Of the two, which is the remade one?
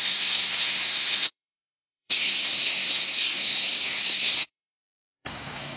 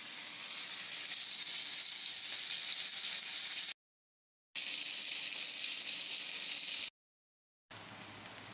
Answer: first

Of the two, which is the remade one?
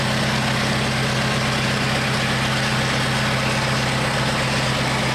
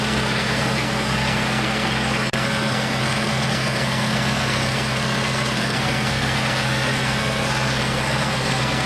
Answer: second